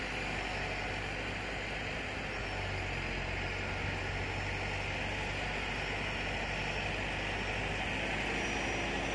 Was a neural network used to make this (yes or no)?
no